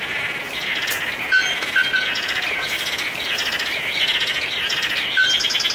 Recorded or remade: recorded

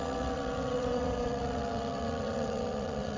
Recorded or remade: remade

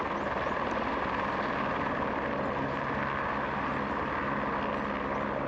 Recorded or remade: recorded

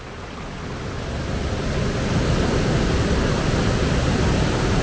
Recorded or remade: recorded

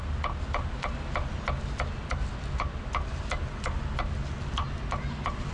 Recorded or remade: recorded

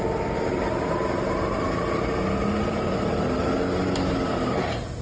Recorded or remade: recorded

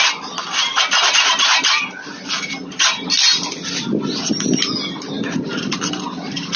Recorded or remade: recorded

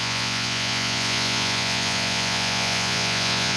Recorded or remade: remade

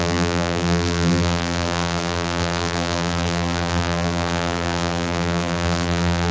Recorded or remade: remade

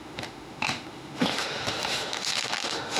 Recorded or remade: remade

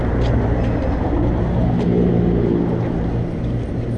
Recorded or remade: recorded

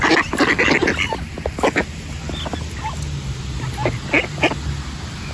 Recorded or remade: recorded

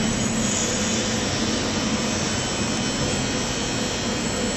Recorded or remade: recorded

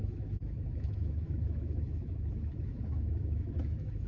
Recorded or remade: remade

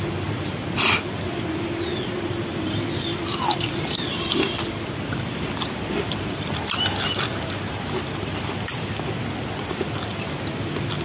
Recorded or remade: recorded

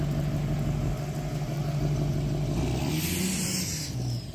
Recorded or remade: recorded